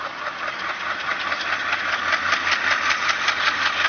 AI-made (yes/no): no